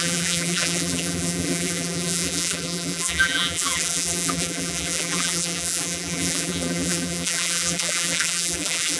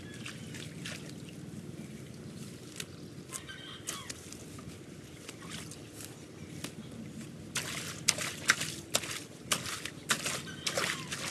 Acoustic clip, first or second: second